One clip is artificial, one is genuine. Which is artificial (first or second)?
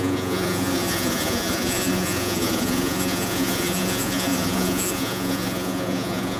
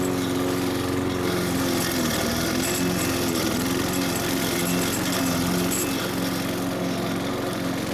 first